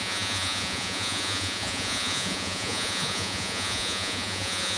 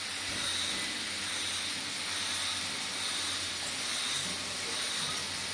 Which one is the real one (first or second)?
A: second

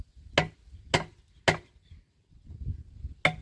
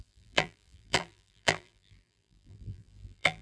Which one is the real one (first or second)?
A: first